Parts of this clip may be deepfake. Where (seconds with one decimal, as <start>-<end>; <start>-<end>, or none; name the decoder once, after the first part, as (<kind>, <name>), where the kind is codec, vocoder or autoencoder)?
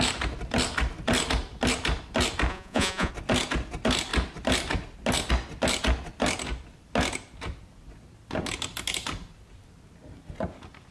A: 2.5-3.1 (vocoder, Vocos)